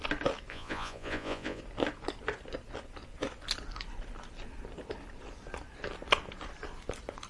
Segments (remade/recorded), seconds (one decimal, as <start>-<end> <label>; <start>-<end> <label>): 0.0-0.5 recorded; 0.5-1.6 remade; 1.6-7.3 recorded